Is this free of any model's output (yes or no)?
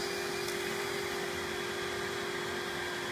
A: yes